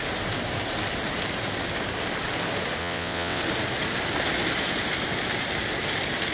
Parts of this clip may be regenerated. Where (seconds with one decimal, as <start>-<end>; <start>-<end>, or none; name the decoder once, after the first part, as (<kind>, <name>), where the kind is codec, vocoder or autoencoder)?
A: 2.8-3.4 (vocoder, WaveNeXt)